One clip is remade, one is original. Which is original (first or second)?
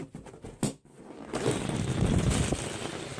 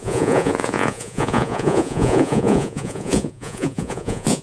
first